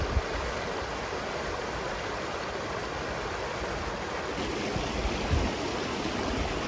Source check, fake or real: real